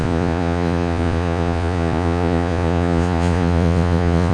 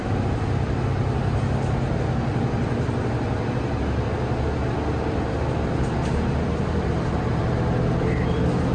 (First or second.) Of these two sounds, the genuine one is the second